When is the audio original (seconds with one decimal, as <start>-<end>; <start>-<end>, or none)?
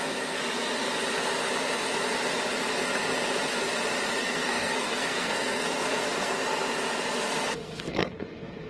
0.4-4.2; 6.4-7.2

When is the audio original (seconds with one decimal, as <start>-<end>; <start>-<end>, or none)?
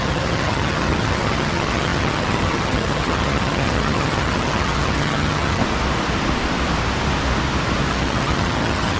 5.6-7.9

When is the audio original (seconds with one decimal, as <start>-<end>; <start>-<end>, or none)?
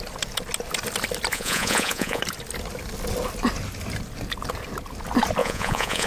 0.0-1.3; 2.2-5.4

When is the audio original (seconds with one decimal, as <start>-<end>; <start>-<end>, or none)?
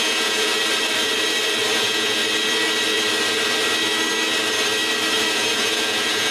0.5-1.8; 2.2-5.3